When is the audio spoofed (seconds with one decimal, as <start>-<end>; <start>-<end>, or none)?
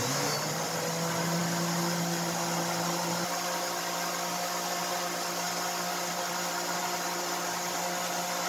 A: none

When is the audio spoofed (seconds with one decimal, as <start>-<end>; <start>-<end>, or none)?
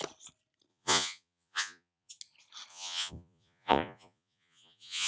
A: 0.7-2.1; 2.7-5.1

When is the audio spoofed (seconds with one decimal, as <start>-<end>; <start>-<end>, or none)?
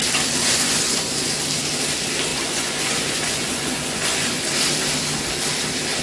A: 0.4-1.4; 2.3-4.4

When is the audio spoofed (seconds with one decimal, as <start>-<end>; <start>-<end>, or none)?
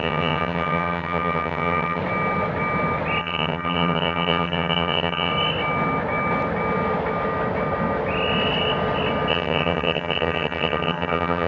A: 0.0-2.0; 3.2-5.3; 9.3-11.5